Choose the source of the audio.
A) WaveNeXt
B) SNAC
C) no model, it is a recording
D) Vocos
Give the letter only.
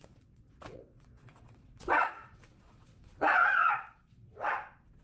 A